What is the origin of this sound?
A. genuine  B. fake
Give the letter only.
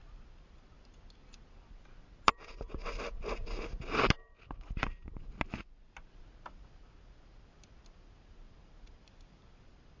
A